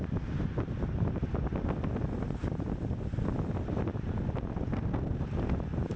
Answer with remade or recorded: recorded